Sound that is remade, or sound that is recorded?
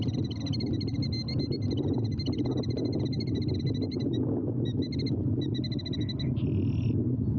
recorded